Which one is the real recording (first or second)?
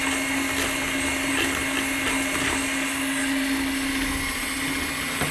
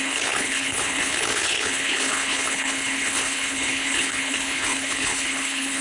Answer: first